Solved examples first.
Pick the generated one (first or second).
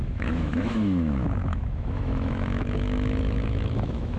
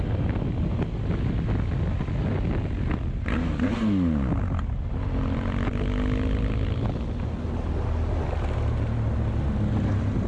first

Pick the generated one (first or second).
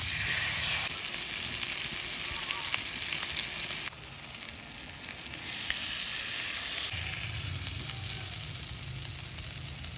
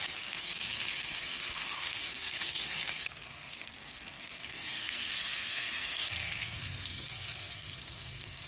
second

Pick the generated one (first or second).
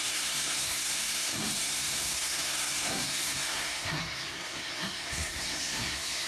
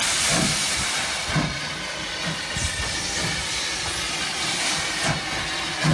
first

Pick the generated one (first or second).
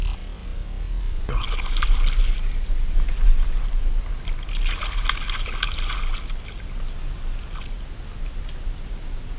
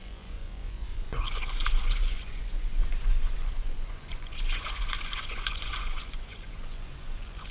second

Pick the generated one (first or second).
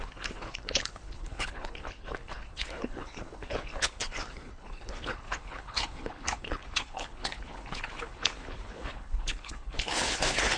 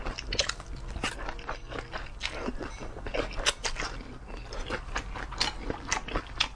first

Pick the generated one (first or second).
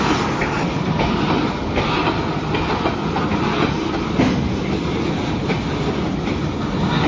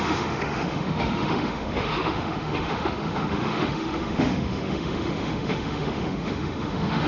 second